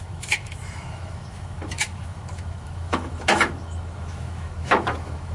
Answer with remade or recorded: remade